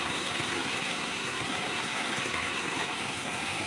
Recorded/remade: remade